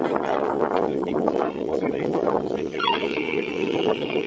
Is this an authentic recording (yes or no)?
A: no